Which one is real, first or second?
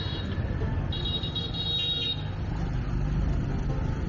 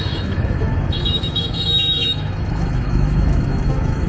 first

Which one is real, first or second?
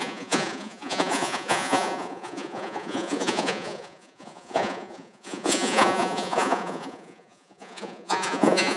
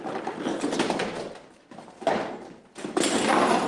second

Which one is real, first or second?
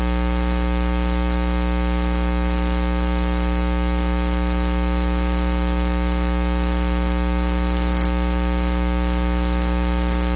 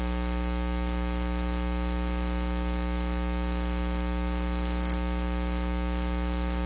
second